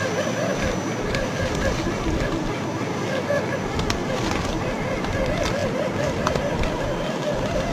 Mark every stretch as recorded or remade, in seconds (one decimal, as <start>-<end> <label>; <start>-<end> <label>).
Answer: 0.0-5.6 recorded; 5.6-6.7 remade; 6.7-7.7 recorded